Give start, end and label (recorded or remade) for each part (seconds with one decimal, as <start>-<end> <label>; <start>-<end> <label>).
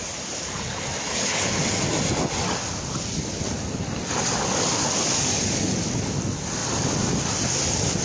0.0-1.1 recorded; 1.1-1.6 remade; 1.6-8.0 recorded